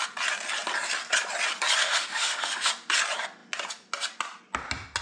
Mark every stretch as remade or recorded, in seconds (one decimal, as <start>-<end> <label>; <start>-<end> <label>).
0.0-1.8 recorded; 1.8-2.7 remade; 2.7-5.0 recorded